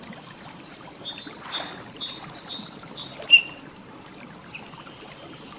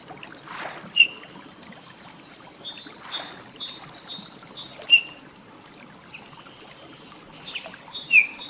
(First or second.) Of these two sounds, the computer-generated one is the first